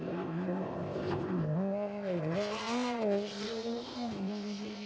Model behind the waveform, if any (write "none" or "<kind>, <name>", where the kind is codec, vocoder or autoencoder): codec, ZipCodec